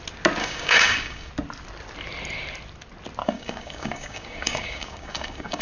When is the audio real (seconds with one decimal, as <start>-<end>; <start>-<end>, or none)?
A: 0.0-0.4; 1.3-3.2